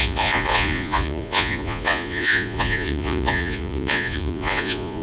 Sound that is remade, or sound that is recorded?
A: remade